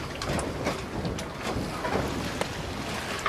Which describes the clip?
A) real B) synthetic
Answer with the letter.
A